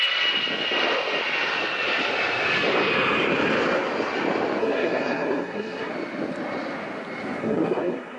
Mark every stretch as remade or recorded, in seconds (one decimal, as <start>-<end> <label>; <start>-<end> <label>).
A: 0.0-4.6 recorded; 4.6-5.9 remade; 5.9-7.4 recorded; 7.4-8.2 remade